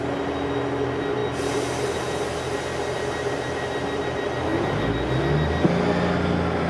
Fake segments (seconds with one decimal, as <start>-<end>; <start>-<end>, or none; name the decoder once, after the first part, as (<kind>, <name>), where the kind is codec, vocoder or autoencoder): none